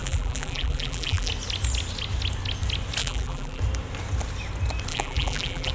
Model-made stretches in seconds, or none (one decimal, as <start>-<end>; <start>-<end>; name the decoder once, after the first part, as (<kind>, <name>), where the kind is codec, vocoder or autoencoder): 0.0-1.3 (vocoder, BigVGAN v2); 3.0-3.6; 4.9-5.7